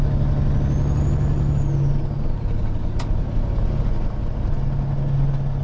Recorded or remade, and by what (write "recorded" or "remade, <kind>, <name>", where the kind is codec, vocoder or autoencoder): recorded